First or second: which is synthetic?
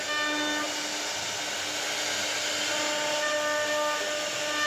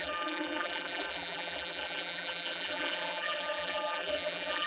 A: second